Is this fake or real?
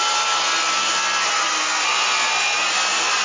real